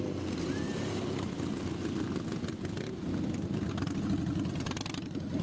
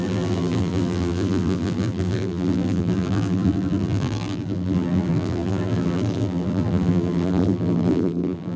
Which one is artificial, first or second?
second